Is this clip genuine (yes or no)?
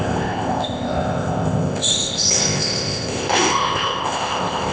no